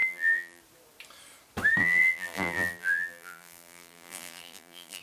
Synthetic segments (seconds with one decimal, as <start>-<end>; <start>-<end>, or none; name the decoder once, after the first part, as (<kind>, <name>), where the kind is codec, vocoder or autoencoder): 0.0-0.6 (vocoder, BigVGAN v2); 1.8-5.0